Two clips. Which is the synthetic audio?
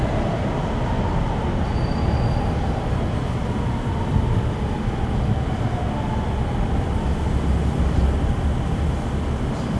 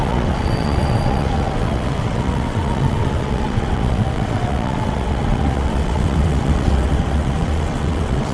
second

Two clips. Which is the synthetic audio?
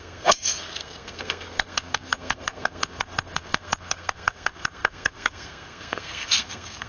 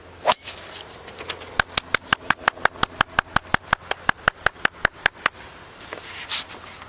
first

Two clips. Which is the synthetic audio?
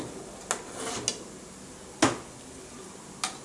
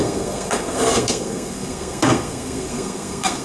second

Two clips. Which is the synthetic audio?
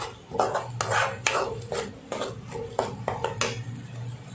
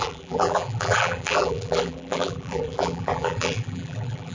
second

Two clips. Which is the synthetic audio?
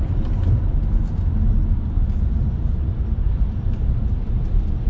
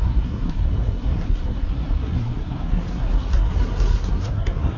second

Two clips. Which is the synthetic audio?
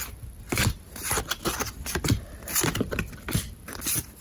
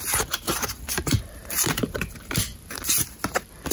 second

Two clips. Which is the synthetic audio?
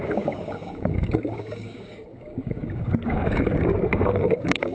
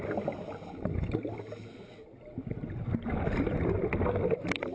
first